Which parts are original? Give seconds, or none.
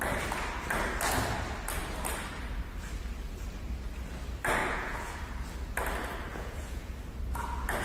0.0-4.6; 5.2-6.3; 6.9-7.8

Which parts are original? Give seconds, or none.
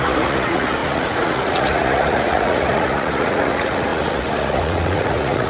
none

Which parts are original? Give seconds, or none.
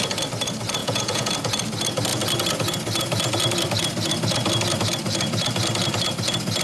0.0-0.8; 1.3-6.6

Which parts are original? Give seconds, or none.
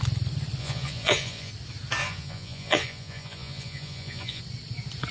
0.0-0.6; 1.5-2.0; 4.4-5.1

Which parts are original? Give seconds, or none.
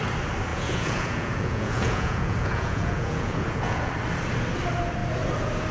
0.0-0.5; 3.9-5.7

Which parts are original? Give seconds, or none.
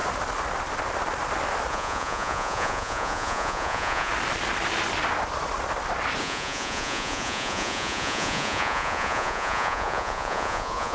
0.0-1.7; 4.1-6.2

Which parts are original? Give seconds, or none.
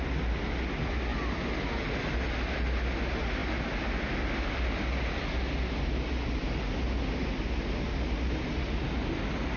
0.0-9.6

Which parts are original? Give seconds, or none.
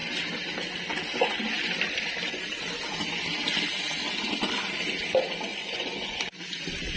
0.0-5.5; 6.3-7.0